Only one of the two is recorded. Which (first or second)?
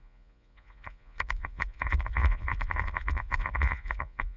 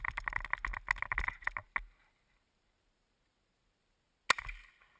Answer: second